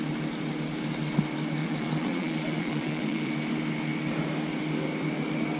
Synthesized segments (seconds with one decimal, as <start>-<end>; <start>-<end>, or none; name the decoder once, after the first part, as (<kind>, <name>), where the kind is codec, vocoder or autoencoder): 1.6-3.3 (vocoder, Vocos)